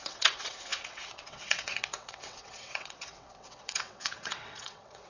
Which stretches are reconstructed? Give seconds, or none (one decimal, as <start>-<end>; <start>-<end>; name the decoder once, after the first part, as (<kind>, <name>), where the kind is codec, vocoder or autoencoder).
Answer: 0.0-5.1 (vocoder, WaveNeXt)